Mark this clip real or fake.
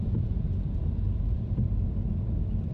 fake